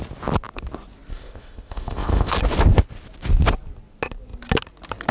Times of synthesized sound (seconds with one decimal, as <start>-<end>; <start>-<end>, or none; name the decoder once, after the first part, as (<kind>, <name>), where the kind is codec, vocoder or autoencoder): 1.1-2.3 (codec, ZipCodec)